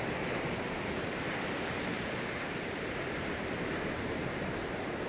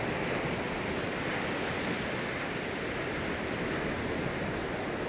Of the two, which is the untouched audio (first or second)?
second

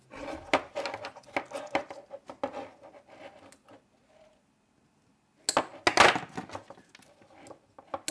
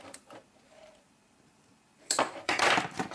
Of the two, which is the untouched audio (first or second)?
first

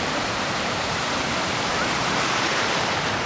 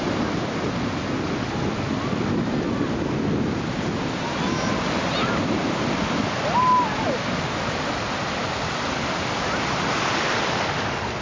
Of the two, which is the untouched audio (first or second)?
second